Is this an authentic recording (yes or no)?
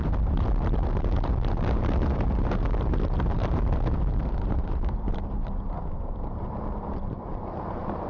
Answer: no